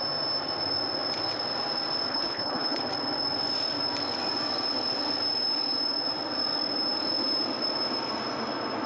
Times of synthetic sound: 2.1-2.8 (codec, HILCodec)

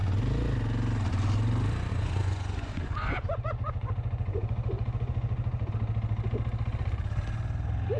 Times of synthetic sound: 1.9-5.7 (vocoder, Vocos)

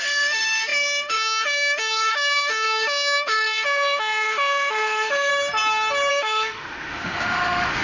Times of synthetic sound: 0.0-5.3 (autoencoder, DAC-VAE); 6.1-7.8

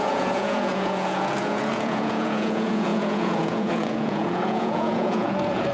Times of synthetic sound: 0.0-5.7 (vocoder, Vocos)

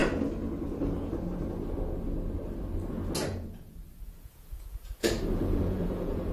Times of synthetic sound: 3.3-6.3 (vocoder, Vocos)

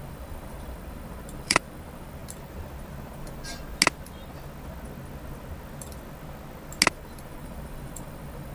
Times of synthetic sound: 0.0-2.2 (vocoder, BigVGAN v2); 7.3-8.5

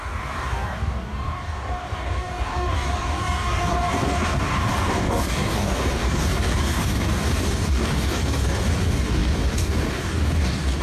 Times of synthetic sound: 0.0-10.8 (codec, DAC)

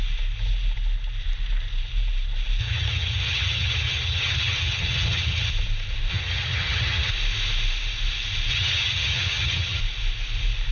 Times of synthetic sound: 2.6-5.5 (vocoder, HiFi-GAN); 6.1-7.1; 8.5-9.8